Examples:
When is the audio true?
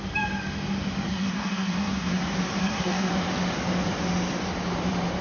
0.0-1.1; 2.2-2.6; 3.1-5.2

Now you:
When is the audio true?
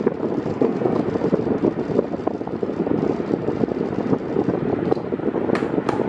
0.0-0.5; 1.0-6.1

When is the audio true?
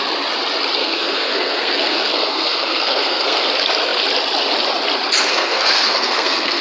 0.0-0.8; 3.5-5.3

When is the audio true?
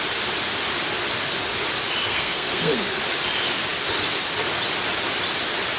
0.0-2.1; 3.0-5.8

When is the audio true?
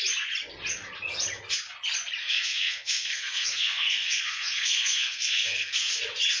0.0-2.2; 6.0-6.4